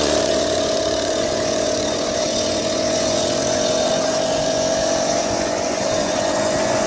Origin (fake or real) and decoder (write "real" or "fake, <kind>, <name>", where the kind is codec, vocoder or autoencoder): fake, vocoder, Vocos